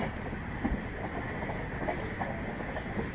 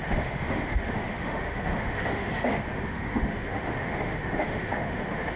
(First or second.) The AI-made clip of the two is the second